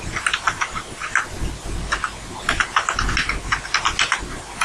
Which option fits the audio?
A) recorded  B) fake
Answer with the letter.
A